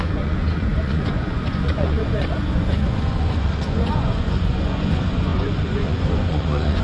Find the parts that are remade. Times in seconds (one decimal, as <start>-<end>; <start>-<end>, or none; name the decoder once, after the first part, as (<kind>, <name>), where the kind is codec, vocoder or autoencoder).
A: 0.0-6.8 (vocoder, Vocos)